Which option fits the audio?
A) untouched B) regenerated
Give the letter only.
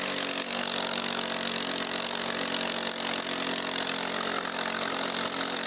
A